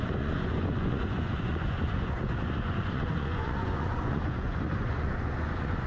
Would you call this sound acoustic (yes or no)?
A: no